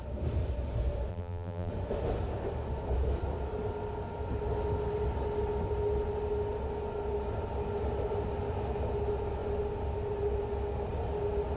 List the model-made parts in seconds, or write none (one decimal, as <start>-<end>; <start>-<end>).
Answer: 1.1-1.7